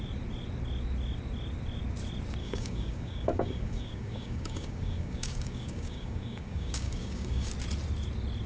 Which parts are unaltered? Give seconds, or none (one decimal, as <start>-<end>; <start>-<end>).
0.0-2.4; 7.5-8.5